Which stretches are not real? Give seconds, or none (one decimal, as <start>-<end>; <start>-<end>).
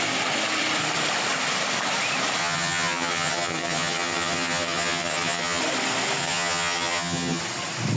2.4-5.6; 6.2-7.4